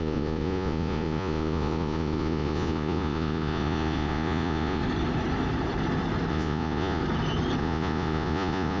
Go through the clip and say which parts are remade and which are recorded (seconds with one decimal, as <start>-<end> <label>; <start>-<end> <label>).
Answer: 0.0-4.8 remade; 4.8-6.3 recorded; 6.3-7.0 remade; 7.0-7.6 recorded; 7.6-8.8 remade